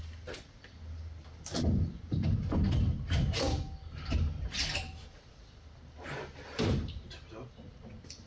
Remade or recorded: recorded